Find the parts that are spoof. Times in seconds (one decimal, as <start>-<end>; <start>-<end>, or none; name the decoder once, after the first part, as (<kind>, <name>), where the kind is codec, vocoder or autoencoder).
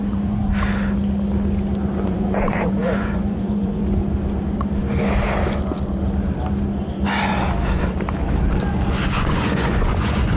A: 0.0-0.4 (vocoder, Vocos); 2.0-4.0; 9.1-10.4